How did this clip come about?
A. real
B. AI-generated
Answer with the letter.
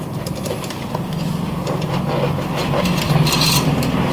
A